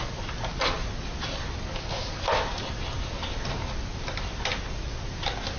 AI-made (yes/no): no